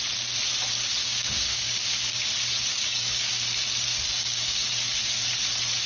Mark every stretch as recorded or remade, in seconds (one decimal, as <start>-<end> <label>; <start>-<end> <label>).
0.0-1.0 recorded; 1.0-2.3 remade; 2.3-2.7 recorded; 2.7-3.3 remade; 3.3-4.2 recorded; 4.2-4.7 remade; 4.7-5.9 recorded